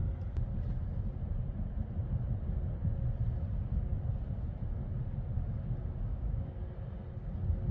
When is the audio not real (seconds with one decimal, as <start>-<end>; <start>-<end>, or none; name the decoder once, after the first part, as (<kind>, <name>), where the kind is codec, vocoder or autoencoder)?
6.1-6.6 (codec, DAC)